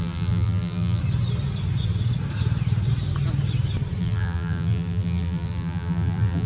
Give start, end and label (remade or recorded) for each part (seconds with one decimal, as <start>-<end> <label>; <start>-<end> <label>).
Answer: 0.0-1.0 remade; 1.0-4.0 recorded; 4.0-6.5 remade